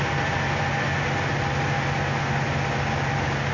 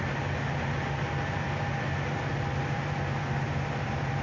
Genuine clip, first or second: first